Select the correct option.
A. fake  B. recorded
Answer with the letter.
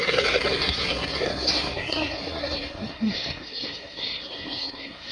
A